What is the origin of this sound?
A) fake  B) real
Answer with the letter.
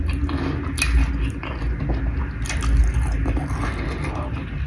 B